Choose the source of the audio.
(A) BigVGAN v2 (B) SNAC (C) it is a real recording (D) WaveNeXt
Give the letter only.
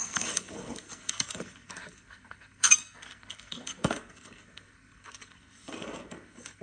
B